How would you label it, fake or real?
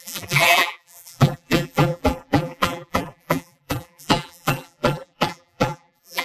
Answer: fake